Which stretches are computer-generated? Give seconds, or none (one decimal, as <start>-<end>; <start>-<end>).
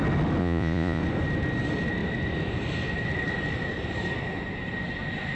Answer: 0.4-1.0